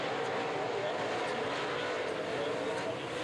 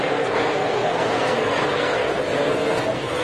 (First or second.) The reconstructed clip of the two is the second